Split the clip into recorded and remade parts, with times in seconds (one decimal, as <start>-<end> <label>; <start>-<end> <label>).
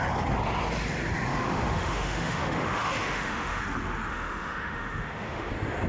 0.0-1.3 recorded; 1.3-3.6 remade; 3.6-4.1 recorded; 4.1-5.5 remade; 5.5-5.9 recorded